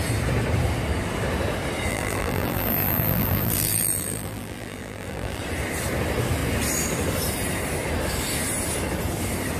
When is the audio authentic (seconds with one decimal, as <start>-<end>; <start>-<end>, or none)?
0.0-1.9; 5.4-9.6